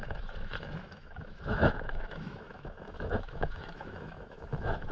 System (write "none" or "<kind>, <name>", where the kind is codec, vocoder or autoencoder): autoencoder, DAC-VAE